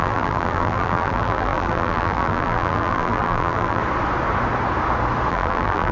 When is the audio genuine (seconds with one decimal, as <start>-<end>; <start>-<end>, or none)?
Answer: 3.8-5.3